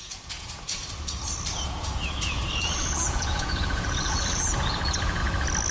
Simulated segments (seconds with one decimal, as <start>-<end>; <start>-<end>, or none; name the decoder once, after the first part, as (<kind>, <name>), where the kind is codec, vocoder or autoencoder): 0.0-0.8 (vocoder, Vocos); 1.5-5.2